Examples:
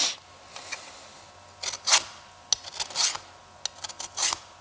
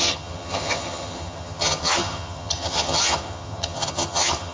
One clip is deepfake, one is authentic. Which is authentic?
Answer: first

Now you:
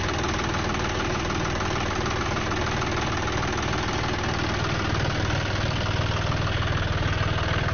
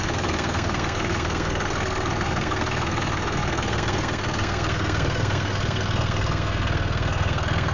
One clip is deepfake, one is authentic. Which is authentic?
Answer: first